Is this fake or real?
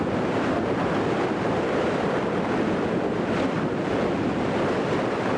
real